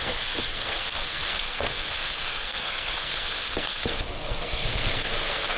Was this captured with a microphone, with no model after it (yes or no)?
no